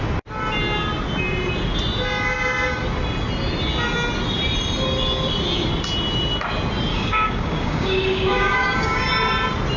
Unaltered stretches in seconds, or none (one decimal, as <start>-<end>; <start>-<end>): 0.0-6.9; 9.1-9.8